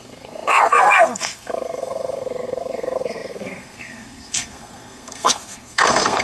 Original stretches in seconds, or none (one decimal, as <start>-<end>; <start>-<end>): none